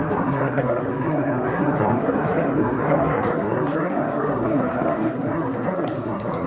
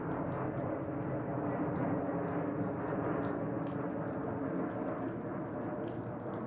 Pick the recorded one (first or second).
second